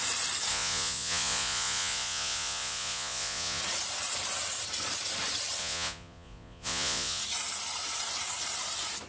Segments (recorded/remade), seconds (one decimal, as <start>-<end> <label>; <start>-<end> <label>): 0.0-0.5 recorded; 0.5-3.6 remade; 3.6-5.6 recorded; 5.6-7.2 remade; 7.2-9.1 recorded